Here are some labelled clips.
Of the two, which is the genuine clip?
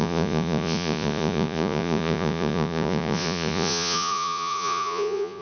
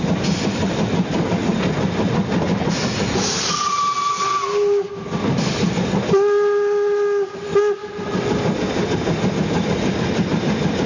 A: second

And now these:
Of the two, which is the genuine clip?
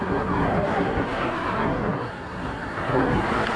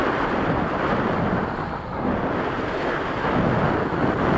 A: second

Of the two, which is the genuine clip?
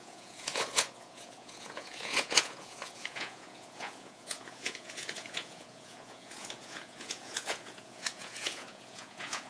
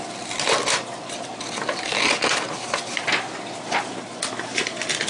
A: second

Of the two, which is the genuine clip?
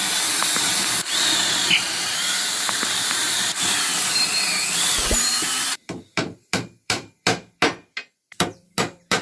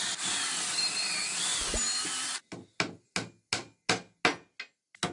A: second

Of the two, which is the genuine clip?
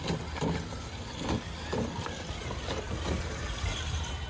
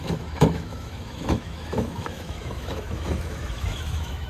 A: first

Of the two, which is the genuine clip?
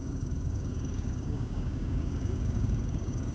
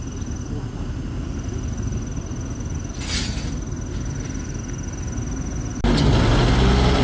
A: second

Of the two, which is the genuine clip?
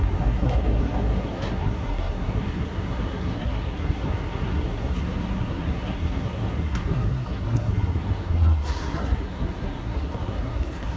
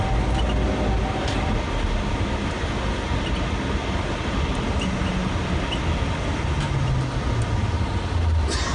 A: second